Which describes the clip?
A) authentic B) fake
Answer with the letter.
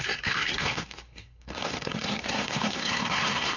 B